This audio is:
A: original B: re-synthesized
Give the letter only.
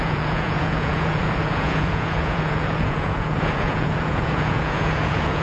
B